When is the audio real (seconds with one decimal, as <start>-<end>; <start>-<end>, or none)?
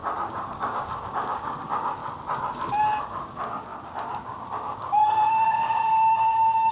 2.0-3.0